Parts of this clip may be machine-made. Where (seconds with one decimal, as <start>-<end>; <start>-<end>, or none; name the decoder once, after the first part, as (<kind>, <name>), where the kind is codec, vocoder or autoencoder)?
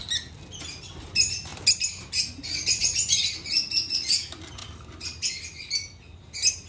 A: none